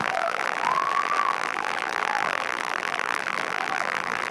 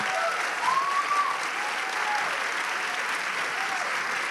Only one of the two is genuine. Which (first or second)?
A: second